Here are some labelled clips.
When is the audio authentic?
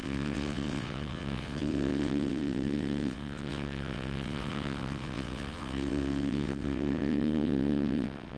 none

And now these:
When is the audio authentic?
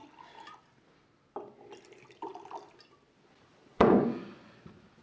0.0-3.7; 4.5-5.0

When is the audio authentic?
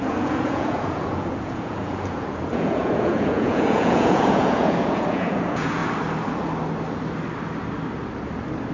5.8-8.7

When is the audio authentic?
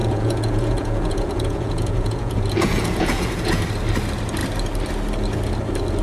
3.6-6.0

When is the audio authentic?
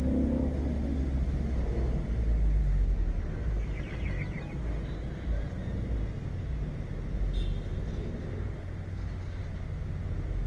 0.0-2.6; 3.8-10.5